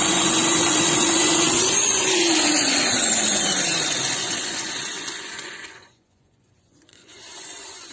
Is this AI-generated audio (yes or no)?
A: yes